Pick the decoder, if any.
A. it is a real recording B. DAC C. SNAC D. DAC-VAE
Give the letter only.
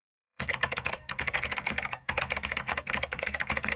C